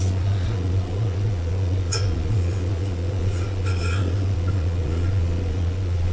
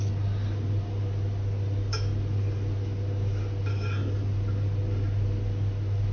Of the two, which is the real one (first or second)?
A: second